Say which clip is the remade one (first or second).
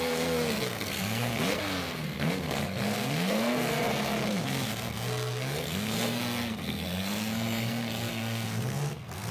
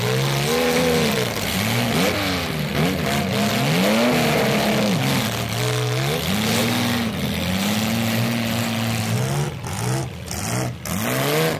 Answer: first